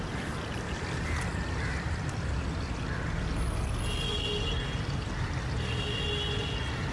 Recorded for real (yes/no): yes